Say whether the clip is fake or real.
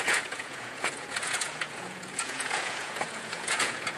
fake